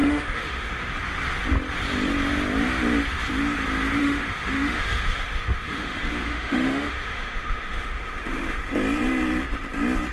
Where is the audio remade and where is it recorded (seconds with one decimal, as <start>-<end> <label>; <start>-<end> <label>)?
0.0-0.9 remade; 0.9-4.0 recorded; 4.0-8.6 remade; 8.6-10.1 recorded

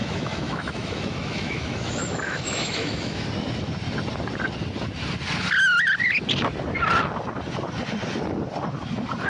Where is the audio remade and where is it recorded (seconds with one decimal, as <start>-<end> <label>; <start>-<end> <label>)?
0.0-3.3 remade; 3.3-9.3 recorded

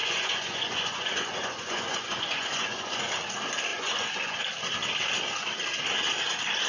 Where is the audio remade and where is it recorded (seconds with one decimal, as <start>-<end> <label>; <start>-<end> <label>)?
0.0-3.0 remade; 3.0-3.7 recorded; 3.7-4.4 remade; 4.4-6.7 recorded

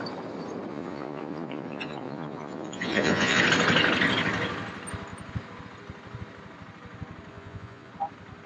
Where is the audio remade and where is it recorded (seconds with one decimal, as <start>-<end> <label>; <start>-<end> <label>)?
0.0-0.7 recorded; 0.7-3.4 remade; 3.4-7.3 recorded; 7.3-7.9 remade; 7.9-8.5 recorded